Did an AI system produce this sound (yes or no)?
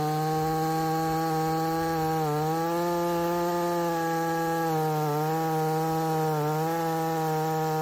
no